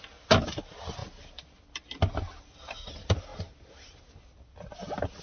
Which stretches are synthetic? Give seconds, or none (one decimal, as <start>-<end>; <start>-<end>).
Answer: none